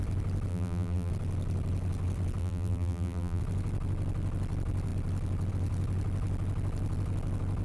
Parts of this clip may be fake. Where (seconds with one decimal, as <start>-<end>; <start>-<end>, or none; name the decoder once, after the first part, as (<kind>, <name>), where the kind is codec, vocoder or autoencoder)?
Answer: 0.5-1.1 (vocoder, BigVGAN v2); 2.4-3.4